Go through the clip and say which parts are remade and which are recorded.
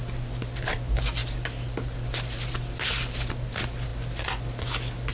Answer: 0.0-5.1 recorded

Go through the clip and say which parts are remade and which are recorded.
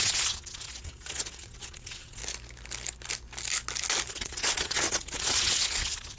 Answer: 0.0-2.2 remade; 2.2-4.1 recorded; 4.1-6.2 remade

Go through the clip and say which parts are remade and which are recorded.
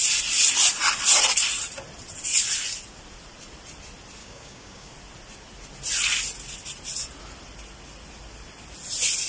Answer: 0.0-4.2 recorded; 4.2-4.9 remade; 4.9-9.3 recorded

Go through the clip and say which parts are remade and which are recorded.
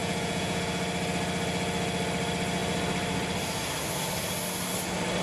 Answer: 0.0-0.6 remade; 0.6-5.2 recorded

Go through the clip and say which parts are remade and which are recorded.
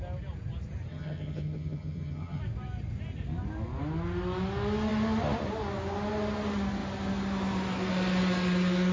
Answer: 0.0-0.9 recorded; 0.9-2.4 remade; 2.4-8.9 recorded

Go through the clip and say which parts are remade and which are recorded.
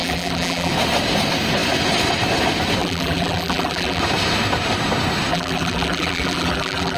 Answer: 0.0-0.7 remade; 0.7-2.8 recorded; 2.8-4.0 remade; 4.0-5.3 recorded; 5.3-7.0 remade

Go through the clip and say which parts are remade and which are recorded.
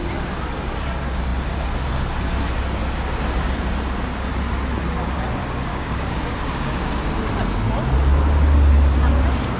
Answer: 0.0-5.7 recorded; 5.7-6.9 remade; 6.9-9.6 recorded